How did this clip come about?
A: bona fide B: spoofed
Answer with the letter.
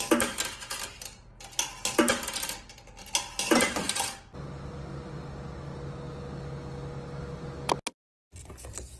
A